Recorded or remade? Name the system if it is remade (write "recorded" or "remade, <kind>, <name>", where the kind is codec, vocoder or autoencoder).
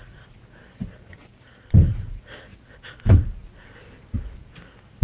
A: recorded